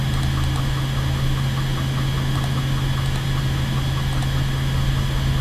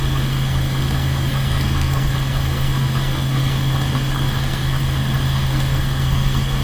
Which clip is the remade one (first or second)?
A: second